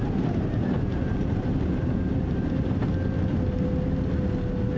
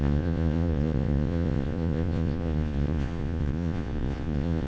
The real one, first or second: first